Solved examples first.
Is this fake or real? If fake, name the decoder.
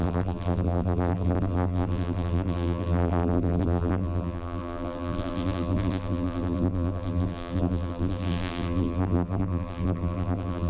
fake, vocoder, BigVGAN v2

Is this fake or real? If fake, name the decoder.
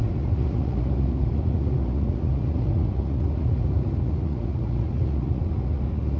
fake, vocoder, Vocos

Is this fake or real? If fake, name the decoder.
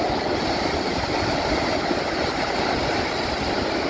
real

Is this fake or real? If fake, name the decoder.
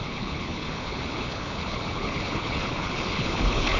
fake, codec, HILCodec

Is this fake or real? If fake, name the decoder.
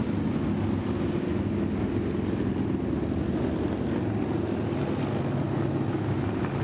real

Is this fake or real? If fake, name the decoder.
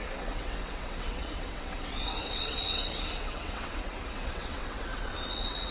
fake, vocoder, WaveNeXt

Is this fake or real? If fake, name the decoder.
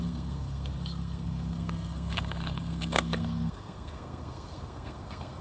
fake, codec, SNAC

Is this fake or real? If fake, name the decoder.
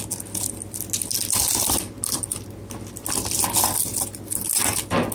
real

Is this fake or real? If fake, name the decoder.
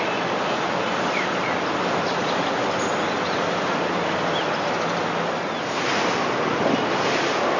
real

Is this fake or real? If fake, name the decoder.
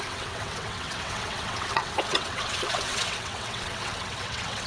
fake, vocoder, WaveNeXt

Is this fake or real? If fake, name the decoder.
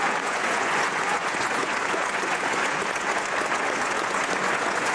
fake, vocoder, Vocos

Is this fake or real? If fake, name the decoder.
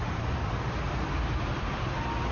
fake, vocoder, BigVGAN v2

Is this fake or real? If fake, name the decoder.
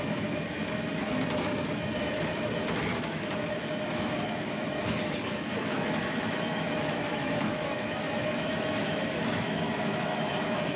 fake, autoencoder, DAC-VAE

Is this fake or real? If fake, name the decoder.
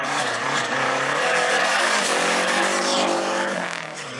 fake, codec, DAC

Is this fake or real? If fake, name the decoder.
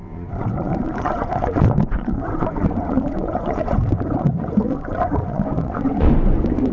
fake, vocoder, Vocos